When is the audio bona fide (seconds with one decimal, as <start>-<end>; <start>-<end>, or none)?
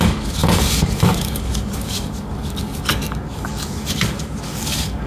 none